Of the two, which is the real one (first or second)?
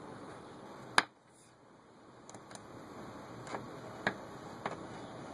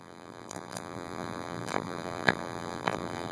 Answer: first